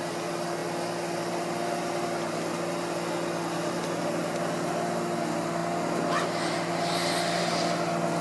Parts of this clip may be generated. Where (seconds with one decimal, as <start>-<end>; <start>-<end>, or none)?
none